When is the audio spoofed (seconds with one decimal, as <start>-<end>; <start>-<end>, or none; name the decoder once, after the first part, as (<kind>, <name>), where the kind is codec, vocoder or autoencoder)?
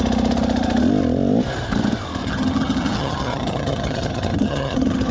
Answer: 2.2-5.1 (vocoder, HiFi-GAN)